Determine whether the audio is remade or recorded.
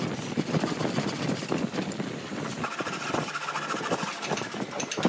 recorded